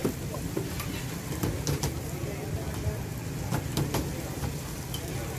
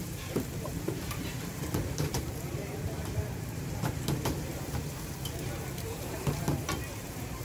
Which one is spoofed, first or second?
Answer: second